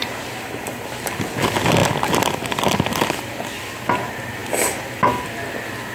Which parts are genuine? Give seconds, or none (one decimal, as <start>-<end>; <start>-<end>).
1.1-5.9